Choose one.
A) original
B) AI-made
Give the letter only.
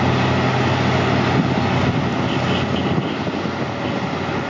A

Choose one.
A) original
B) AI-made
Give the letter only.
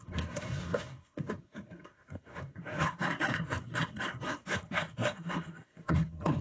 B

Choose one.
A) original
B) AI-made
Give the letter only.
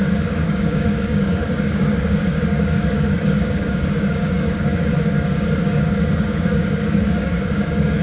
B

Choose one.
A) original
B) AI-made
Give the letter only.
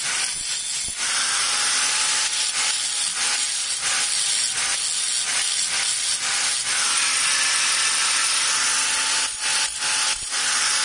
A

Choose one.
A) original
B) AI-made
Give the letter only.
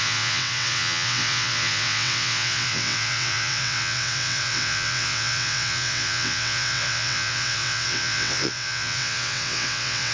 B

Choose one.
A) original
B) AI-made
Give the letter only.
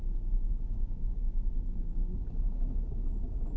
A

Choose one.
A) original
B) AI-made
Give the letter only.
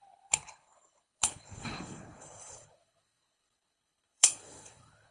B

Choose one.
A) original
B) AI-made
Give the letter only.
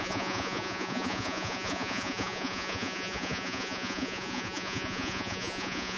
B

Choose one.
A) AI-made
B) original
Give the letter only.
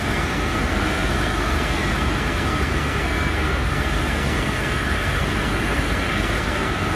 A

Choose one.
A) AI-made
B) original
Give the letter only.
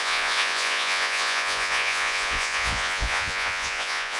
A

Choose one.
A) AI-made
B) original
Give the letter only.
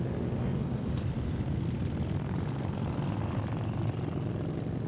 B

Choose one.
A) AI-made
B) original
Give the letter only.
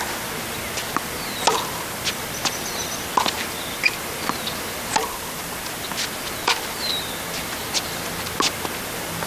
B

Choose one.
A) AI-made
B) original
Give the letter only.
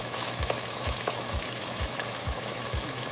A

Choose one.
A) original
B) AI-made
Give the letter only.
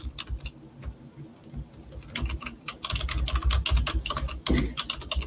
A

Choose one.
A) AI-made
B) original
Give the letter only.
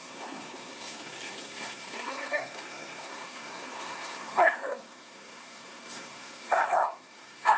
A